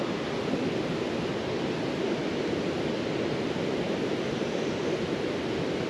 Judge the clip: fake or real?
real